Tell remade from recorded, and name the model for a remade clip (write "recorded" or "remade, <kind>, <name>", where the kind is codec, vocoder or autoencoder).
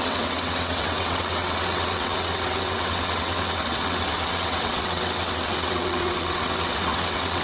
remade, vocoder, WaveNeXt